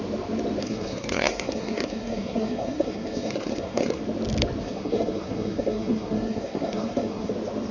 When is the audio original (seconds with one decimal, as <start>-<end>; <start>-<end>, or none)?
0.0-0.6; 4.0-4.6; 7.3-7.7